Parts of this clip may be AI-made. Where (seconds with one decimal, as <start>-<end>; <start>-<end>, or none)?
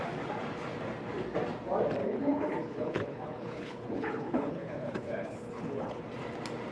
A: 2.0-6.0